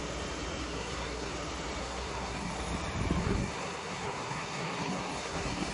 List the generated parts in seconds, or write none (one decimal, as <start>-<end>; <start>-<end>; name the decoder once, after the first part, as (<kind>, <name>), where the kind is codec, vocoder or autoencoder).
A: 0.6-1.3 (codec, SNAC); 1.8-2.5; 3.2-5.7